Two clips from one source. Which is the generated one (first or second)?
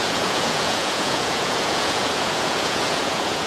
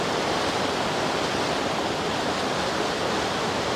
first